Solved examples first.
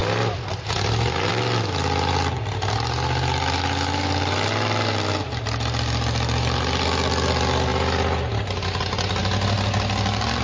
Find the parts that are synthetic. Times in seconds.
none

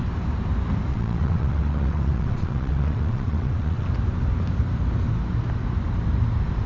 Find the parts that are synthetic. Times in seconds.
0.9-3.9 (vocoder, WaveNeXt)